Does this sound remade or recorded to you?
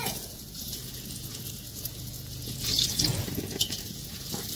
remade